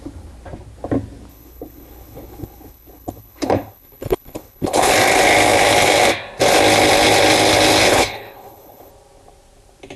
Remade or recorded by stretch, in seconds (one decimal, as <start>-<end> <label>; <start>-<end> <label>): 0.0-1.3 recorded; 1.3-4.9 remade; 4.9-7.9 recorded; 7.9-8.9 remade; 8.9-10.0 recorded